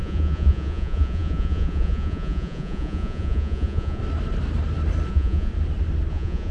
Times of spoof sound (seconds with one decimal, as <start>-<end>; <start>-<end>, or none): 0.0-4.0; 5.1-5.5; 6.1-6.5